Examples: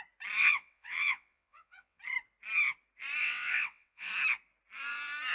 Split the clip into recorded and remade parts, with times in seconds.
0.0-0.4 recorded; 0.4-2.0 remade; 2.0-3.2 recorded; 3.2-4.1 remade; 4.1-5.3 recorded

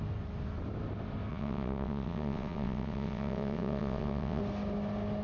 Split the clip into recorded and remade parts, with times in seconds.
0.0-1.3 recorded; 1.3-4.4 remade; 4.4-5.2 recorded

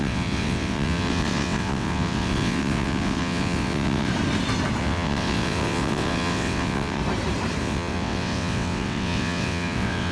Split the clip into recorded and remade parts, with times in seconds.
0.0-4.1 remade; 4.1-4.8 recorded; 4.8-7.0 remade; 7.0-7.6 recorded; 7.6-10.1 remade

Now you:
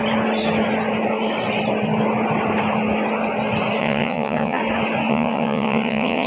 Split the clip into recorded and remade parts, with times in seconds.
0.0-3.8 recorded; 3.8-4.6 remade; 4.6-5.1 recorded; 5.1-6.3 remade